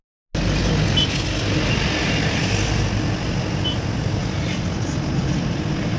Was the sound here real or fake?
real